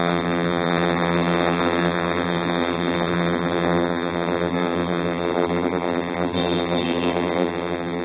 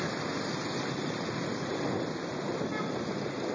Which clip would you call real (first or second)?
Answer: second